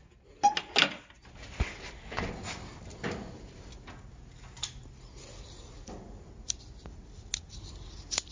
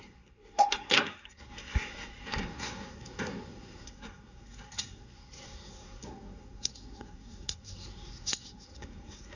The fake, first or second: second